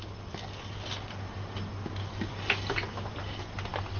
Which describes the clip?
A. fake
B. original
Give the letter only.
B